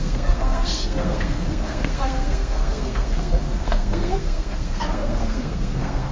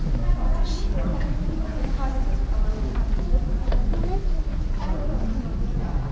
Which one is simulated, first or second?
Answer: first